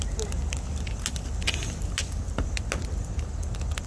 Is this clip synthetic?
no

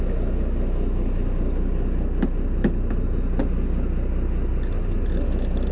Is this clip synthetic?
no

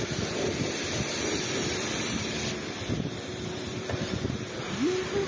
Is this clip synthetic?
yes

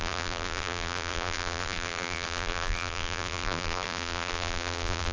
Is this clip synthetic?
yes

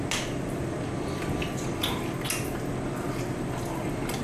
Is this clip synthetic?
no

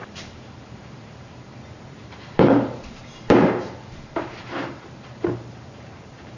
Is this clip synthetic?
yes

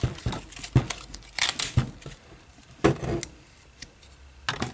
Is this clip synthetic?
no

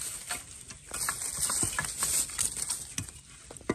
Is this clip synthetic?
no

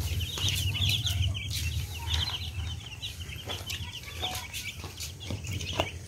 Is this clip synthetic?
no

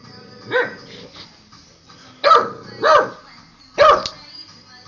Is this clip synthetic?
no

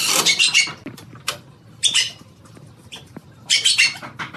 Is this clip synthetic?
no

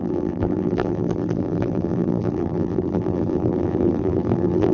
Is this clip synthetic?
yes